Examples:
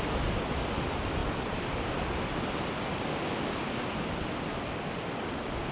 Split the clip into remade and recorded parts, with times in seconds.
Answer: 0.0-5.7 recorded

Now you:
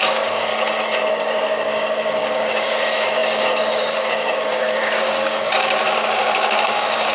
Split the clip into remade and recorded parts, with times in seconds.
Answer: 0.0-0.5 remade; 0.5-1.1 recorded; 1.1-7.1 remade

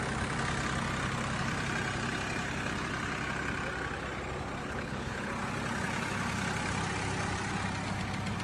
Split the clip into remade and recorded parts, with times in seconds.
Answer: 0.0-4.6 recorded; 4.6-5.3 remade; 5.3-8.4 recorded